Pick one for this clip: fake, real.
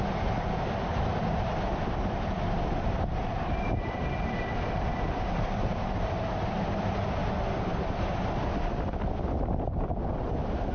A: fake